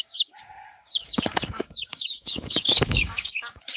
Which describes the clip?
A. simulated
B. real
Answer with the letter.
A